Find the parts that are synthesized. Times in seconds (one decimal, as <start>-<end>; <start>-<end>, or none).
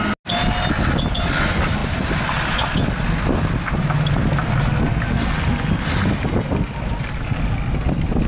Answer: none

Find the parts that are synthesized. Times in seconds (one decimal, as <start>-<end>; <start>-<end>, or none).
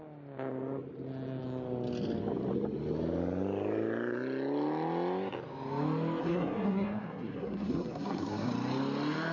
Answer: 6.2-8.5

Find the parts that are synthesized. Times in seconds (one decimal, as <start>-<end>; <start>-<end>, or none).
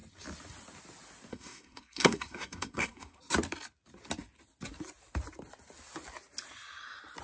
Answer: 1.3-3.2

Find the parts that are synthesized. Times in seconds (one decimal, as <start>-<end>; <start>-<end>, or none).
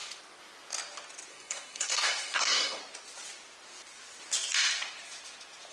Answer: 1.3-2.8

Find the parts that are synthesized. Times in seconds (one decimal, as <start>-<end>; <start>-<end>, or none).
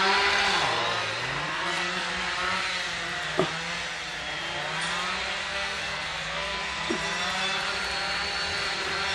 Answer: 1.5-2.1; 5.4-6.9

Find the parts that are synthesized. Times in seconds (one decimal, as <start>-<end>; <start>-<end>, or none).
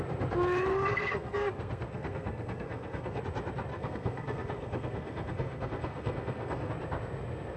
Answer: 0.7-3.2; 3.7-6.7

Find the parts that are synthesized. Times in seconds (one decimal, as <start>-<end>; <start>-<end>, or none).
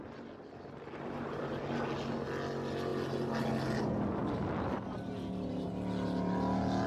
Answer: none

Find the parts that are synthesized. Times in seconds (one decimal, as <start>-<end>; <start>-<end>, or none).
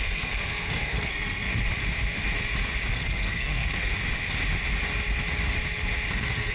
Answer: 0.0-1.5; 2.9-3.9; 6.1-6.5